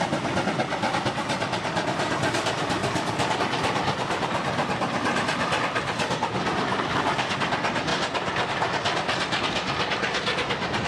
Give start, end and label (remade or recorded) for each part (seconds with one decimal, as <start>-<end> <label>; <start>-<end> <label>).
0.0-2.8 recorded; 2.8-3.4 remade; 3.4-6.7 recorded; 6.7-7.4 remade; 7.4-10.9 recorded